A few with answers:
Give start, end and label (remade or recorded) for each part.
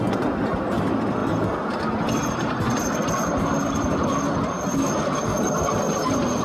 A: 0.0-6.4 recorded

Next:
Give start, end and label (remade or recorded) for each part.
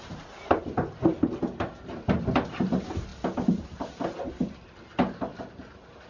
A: 0.0-6.1 recorded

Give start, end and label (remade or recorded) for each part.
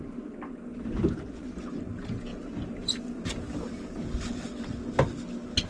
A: 0.0-0.7 recorded; 0.7-1.6 remade; 1.6-2.3 recorded; 2.3-3.5 remade; 3.5-5.7 recorded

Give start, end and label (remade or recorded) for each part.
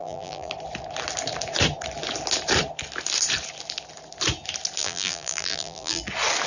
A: 0.0-0.5 remade; 0.5-4.8 recorded; 4.8-6.0 remade; 6.0-6.5 recorded